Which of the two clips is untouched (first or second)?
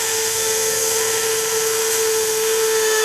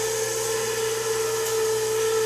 second